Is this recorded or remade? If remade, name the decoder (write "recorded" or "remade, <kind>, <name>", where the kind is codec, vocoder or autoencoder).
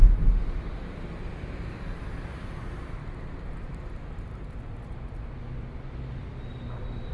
recorded